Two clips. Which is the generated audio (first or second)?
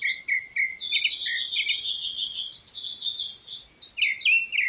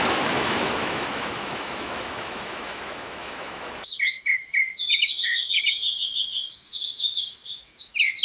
second